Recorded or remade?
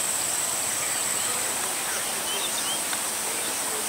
recorded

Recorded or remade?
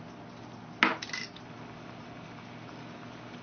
recorded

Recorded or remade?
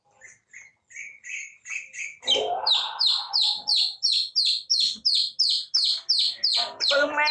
recorded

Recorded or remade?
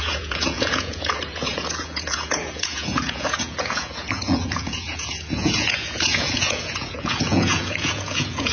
remade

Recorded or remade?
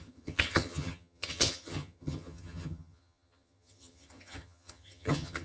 remade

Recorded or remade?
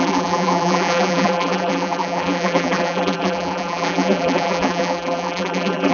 remade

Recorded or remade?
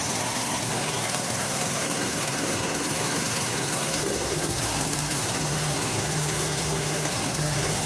remade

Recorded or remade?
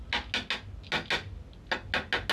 recorded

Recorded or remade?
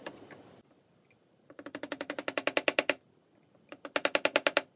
recorded